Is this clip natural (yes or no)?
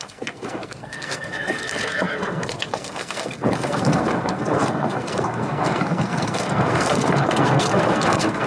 no